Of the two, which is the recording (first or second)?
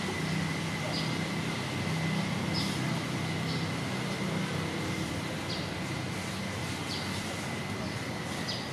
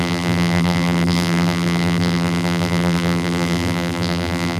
first